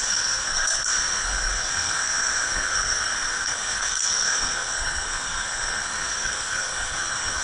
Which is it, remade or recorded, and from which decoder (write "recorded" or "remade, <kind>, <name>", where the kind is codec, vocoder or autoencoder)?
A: remade, codec, SNAC